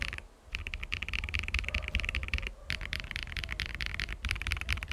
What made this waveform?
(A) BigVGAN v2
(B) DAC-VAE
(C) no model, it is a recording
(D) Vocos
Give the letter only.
C